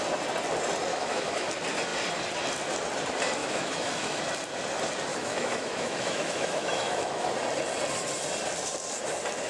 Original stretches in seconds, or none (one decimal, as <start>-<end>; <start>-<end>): 0.0-0.9; 1.5-3.4; 4.2-5.1; 7.3-9.5